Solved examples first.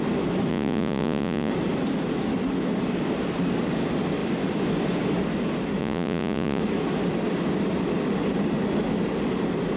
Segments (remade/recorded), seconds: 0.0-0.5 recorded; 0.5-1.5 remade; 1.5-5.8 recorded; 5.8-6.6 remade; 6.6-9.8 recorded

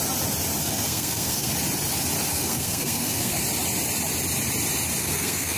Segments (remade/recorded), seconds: 0.0-0.6 recorded; 0.6-1.5 remade; 1.5-2.3 recorded; 2.3-3.4 remade; 3.4-5.0 recorded; 5.0-5.6 remade

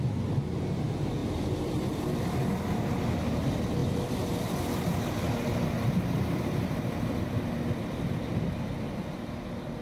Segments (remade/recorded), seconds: 0.0-1.2 recorded; 1.2-2.2 remade; 2.2-3.8 recorded; 3.8-8.3 remade; 8.3-9.8 recorded

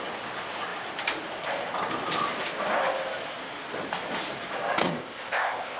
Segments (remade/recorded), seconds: 0.0-4.8 recorded; 4.8-5.8 remade

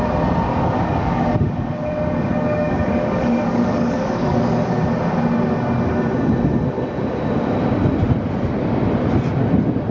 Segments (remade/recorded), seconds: 0.0-0.5 recorded; 0.5-4.8 remade; 4.8-9.9 recorded

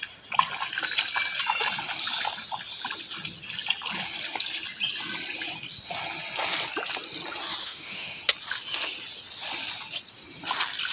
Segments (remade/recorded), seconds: 0.0-7.6 recorded; 7.6-8.2 remade; 8.2-10.9 recorded

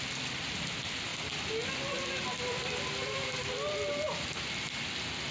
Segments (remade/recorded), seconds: 0.0-5.3 recorded

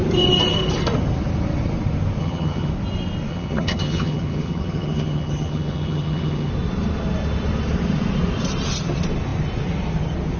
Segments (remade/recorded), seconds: 0.0-2.2 recorded; 2.2-2.7 remade; 2.7-3.3 recorded; 3.3-6.5 remade; 6.5-10.4 recorded